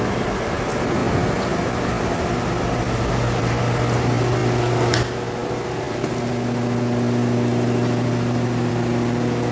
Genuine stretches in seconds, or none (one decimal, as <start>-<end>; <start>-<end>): 0.0-9.5